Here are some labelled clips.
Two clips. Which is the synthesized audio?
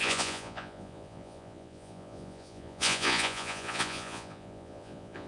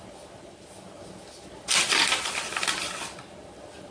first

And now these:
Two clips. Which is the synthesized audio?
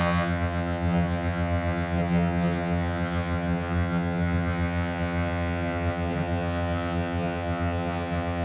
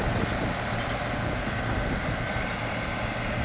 first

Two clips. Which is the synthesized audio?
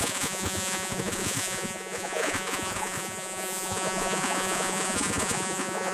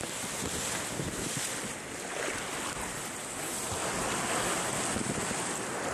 first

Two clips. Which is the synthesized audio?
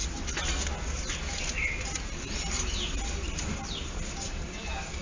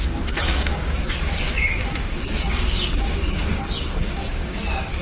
second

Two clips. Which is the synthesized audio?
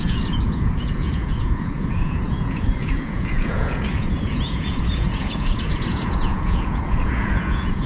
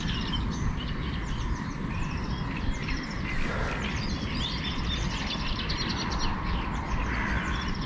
first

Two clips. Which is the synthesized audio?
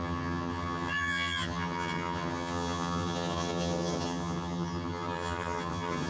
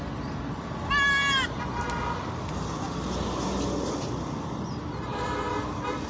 first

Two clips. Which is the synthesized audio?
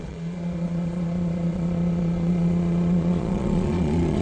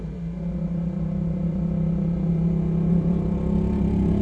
first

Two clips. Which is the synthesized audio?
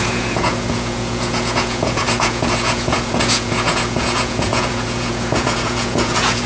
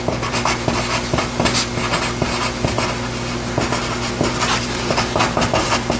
first